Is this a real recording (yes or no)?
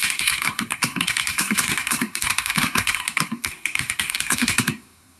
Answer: no